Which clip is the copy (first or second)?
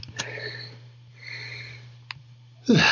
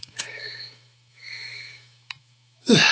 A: second